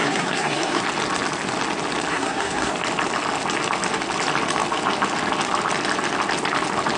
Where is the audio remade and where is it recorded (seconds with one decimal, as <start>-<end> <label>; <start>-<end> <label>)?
0.0-0.8 remade; 0.8-2.1 recorded; 2.1-2.7 remade; 2.7-7.0 recorded